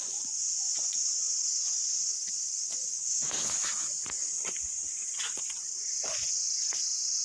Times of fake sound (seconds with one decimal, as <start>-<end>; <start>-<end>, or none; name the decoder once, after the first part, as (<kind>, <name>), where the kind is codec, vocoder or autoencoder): 0.0-2.9 (vocoder, Vocos); 4.2-7.2